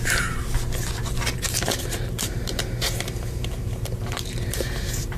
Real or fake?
fake